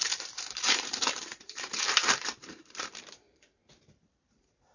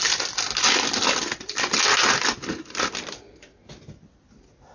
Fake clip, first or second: first